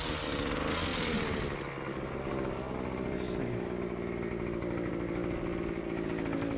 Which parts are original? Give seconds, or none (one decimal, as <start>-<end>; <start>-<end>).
0.0-6.6

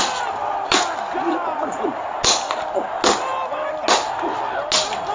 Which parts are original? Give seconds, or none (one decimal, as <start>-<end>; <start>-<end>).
0.0-5.1

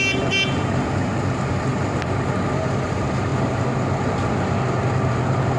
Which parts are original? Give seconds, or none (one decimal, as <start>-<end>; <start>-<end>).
0.0-5.6

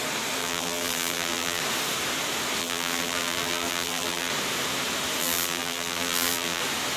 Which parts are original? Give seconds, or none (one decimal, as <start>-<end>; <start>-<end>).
0.0-0.4; 1.6-2.6; 4.3-5.2; 6.6-7.0

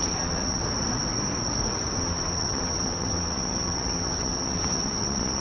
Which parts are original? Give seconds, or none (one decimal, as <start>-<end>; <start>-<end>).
0.6-2.0

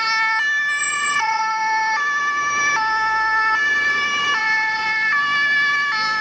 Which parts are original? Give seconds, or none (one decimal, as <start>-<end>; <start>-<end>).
0.0-0.8; 1.4-6.2